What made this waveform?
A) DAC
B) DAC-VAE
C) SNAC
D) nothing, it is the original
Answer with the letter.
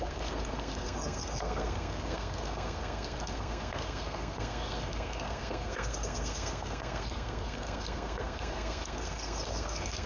C